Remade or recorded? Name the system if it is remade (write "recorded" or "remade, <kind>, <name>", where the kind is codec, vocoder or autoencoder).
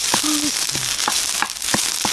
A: recorded